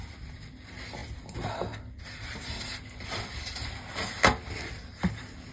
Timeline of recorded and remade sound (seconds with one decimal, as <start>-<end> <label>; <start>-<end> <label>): 0.0-5.5 recorded